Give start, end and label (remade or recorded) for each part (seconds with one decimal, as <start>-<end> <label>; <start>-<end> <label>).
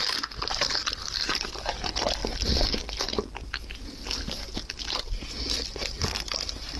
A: 0.0-6.8 recorded